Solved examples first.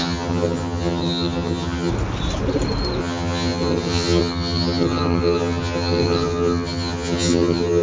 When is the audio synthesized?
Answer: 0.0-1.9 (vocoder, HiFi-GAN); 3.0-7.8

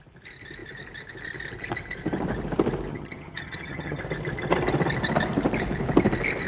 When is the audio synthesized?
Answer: 2.9-4.0 (vocoder, HiFi-GAN)

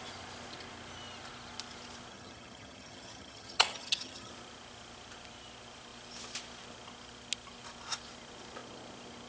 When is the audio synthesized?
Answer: 2.1-4.3 (vocoder, HiFi-GAN)

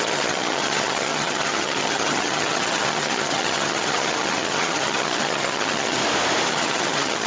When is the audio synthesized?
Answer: 0.0-6.0 (vocoder, HiFi-GAN); 6.5-7.3

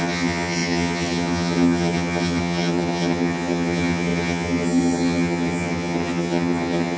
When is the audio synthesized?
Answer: 0.0-7.0 (vocoder, HiFi-GAN)

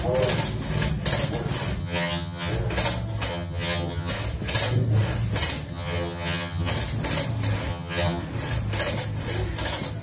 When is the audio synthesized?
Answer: 1.8-2.5 (vocoder, HiFi-GAN); 3.3-4.1; 5.7-6.7; 7.7-8.2